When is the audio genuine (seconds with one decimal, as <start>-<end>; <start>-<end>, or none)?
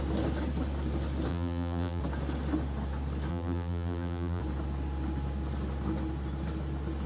0.0-1.3; 2.0-3.3; 4.4-7.1